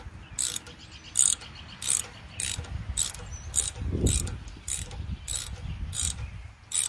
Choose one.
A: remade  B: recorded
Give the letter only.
B